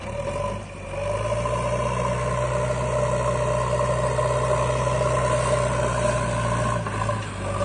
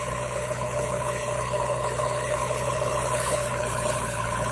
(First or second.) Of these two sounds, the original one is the first